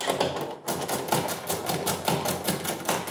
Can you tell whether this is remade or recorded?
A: recorded